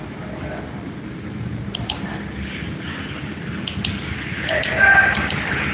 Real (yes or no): yes